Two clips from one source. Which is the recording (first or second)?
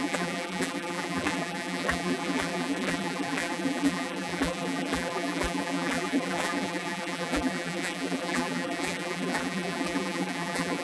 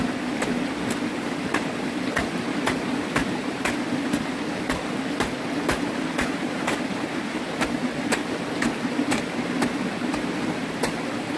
second